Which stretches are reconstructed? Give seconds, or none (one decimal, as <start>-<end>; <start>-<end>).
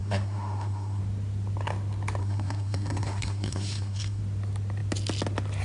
0.0-1.0; 2.2-4.2